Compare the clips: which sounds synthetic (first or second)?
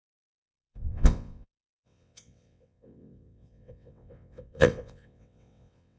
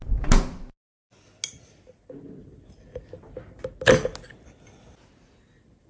first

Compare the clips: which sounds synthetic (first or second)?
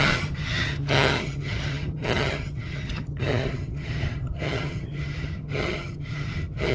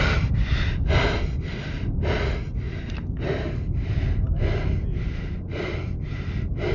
first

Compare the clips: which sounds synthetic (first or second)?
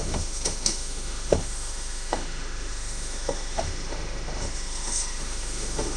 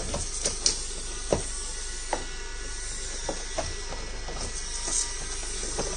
first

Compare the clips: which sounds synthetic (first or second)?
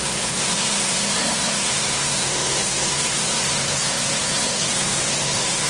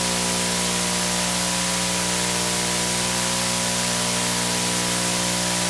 first